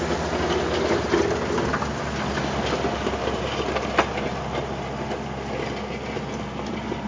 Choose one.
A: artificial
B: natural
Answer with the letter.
B